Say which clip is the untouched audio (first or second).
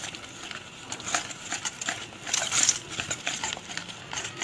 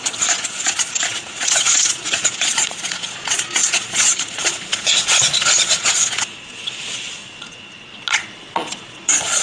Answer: first